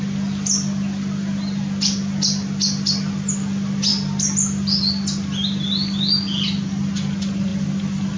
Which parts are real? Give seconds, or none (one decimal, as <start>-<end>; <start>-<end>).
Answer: 0.0-8.2